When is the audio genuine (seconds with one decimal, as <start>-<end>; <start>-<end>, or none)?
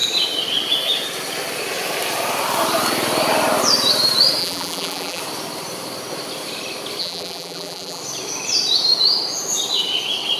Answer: 0.0-4.4; 5.2-7.0; 8.0-10.4